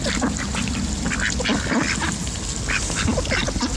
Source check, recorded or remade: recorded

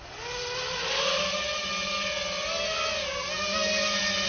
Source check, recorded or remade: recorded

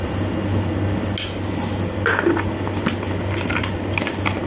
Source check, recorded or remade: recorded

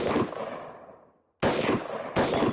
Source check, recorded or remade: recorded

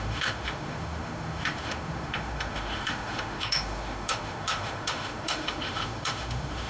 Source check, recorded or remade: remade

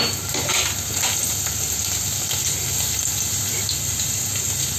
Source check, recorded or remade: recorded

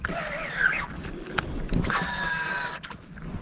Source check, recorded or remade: recorded